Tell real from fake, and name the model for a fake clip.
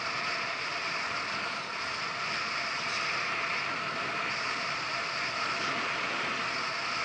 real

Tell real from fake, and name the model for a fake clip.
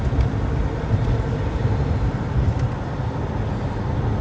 real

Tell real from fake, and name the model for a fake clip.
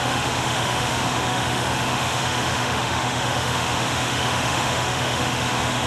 fake, autoencoder, DAC-VAE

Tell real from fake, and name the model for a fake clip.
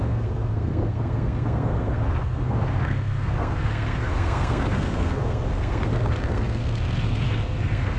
fake, codec, SNAC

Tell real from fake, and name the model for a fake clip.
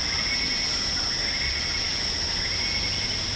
real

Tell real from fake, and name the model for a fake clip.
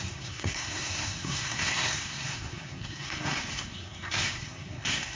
fake, codec, SNAC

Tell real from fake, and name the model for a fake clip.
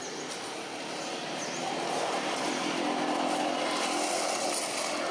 real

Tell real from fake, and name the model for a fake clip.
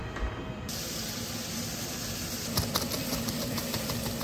fake, vocoder, BigVGAN v2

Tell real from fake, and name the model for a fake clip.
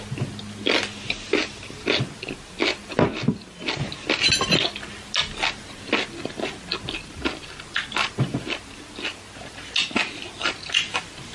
real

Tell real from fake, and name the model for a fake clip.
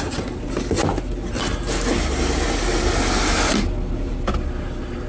real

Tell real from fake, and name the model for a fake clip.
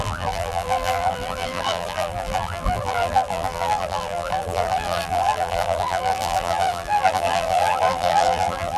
fake, vocoder, BigVGAN v2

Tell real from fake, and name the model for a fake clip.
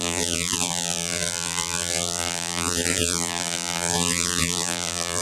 fake, vocoder, BigVGAN v2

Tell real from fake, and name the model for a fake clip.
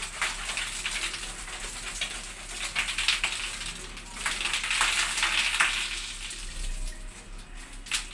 real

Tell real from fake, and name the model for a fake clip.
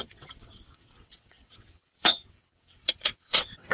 fake, vocoder, WaveNeXt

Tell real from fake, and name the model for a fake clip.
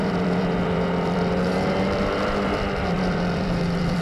fake, vocoder, BigVGAN v2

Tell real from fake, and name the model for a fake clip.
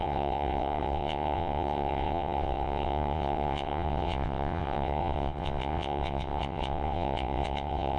fake, vocoder, WaveNeXt